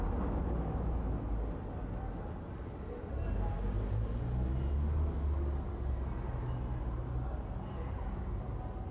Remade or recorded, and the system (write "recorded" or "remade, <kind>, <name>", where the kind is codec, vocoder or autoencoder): recorded